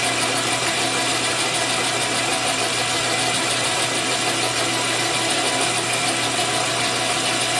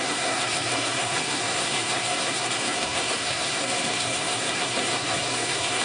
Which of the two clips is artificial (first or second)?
second